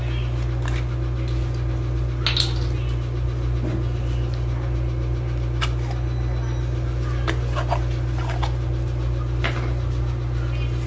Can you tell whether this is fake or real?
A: real